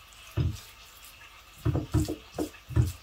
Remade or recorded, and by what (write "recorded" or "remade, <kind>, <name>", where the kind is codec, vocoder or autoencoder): recorded